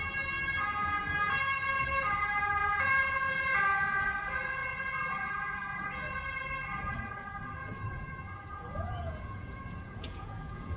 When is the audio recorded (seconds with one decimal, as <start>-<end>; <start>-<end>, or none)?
0.0-2.6; 3.6-4.6; 6.0-7.9